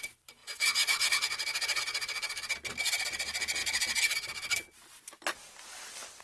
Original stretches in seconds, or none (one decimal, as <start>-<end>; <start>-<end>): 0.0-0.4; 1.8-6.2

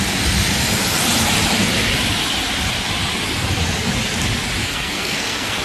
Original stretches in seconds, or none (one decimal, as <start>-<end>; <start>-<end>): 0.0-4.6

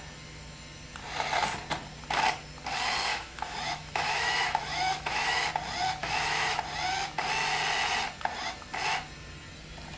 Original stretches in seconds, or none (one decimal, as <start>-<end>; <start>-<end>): 0.0-3.1; 5.5-6.0; 6.6-10.0

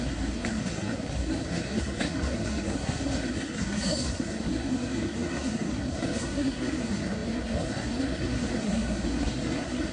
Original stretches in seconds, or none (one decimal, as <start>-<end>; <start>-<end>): none

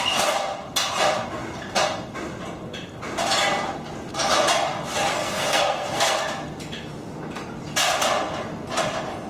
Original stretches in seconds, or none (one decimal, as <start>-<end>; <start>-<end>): 0.0-5.1; 6.2-9.3

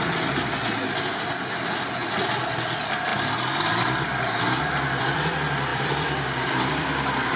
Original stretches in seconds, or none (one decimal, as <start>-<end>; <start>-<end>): 0.0-7.4

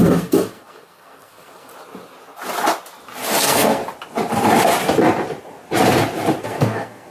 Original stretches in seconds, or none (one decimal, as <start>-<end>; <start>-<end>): 1.7-3.4; 3.8-6.4

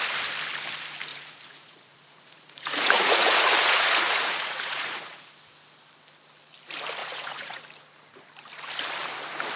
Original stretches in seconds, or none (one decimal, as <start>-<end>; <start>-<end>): 0.0-1.1; 5.3-7.0; 7.6-9.6